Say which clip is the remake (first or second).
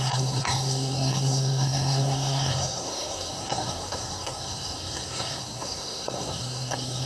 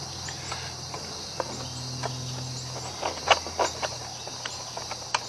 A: first